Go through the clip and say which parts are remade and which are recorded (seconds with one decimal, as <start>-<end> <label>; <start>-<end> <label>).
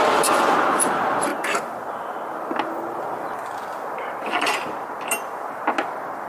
0.0-6.3 recorded